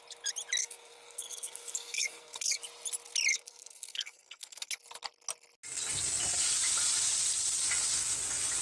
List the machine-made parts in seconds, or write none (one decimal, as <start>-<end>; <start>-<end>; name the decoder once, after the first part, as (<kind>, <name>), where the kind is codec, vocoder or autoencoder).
0.6-2.6 (codec, SNAC); 3.3-4.7